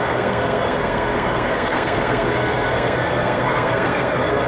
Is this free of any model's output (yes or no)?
no